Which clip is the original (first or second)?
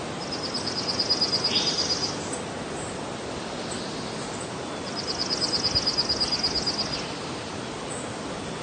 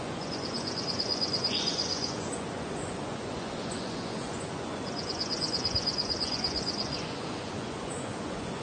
first